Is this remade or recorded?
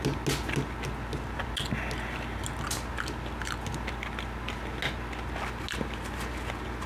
recorded